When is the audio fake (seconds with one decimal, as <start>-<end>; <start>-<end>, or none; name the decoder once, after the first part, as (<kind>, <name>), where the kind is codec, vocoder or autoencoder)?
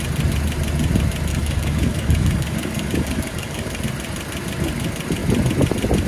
1.3-3.8 (codec, DAC)